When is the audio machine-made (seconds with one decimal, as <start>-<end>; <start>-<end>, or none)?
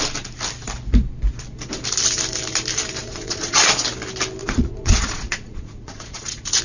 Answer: 3.0-3.6; 4.4-6.6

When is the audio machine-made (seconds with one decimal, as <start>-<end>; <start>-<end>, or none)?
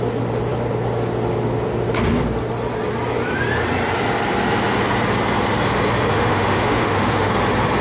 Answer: 6.1-7.3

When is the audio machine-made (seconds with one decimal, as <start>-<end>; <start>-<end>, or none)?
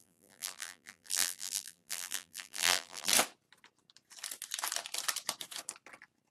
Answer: 0.0-3.1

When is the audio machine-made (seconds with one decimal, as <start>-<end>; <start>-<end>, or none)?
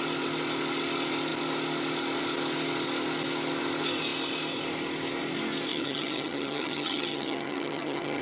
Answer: 5.7-8.2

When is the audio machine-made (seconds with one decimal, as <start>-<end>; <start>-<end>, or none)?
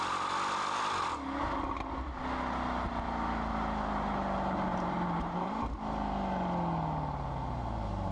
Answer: 4.7-5.5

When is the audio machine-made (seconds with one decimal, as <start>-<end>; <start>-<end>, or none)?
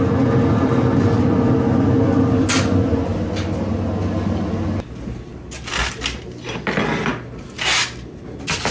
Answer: none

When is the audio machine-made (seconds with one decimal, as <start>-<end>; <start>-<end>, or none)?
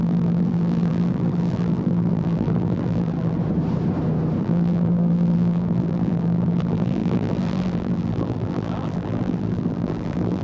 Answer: 0.0-3.4; 4.4-10.4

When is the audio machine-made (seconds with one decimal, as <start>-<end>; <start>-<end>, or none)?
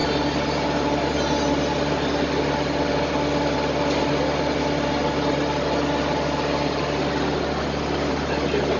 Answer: none